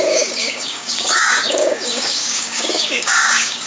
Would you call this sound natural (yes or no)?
no